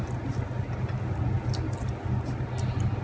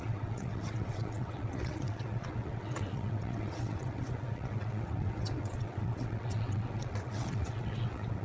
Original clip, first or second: first